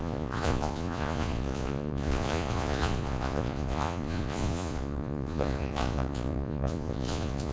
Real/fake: fake